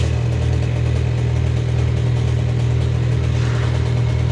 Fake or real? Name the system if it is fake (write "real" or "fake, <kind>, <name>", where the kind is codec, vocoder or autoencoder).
real